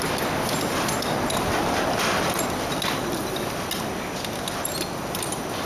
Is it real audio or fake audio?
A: real